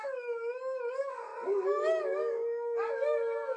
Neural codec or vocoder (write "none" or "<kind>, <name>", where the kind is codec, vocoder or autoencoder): codec, DAC